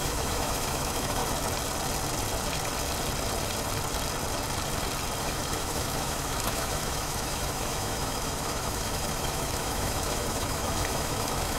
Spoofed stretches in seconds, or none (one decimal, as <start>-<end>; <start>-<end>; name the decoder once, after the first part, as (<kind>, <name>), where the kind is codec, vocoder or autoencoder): 0.0-1.2 (autoencoder, DAC-VAE); 5.2-11.6

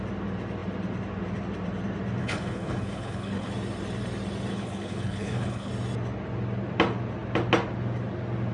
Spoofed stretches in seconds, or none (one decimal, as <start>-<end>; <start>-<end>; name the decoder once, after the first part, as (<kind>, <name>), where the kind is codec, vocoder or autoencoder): 2.2-3.5 (codec, HILCodec); 4.5-5.7

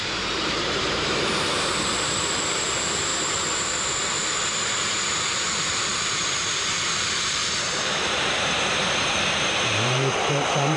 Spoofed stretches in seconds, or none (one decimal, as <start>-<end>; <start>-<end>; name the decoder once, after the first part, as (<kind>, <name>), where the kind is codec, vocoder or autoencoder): 0.0-10.8 (vocoder, BigVGAN v2)